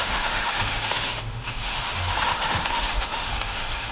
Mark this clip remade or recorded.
remade